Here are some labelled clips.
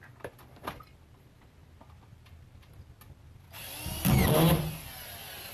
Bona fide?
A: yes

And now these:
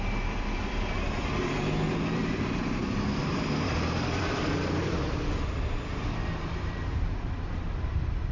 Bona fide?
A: no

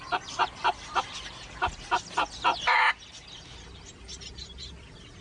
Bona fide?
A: yes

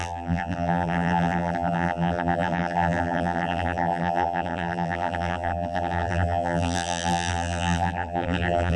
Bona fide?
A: no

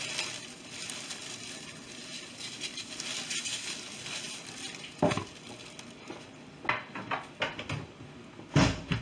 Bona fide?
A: yes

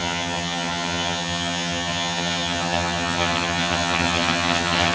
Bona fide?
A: no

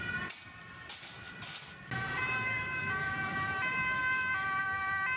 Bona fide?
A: yes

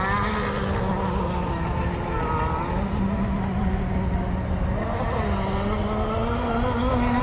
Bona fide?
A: yes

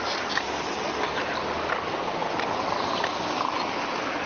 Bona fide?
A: yes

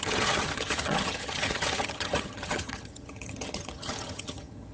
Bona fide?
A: no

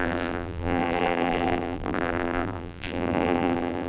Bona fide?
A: no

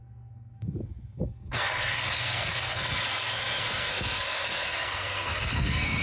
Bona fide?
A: no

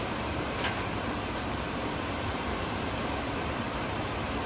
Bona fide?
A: no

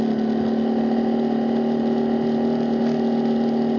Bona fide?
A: yes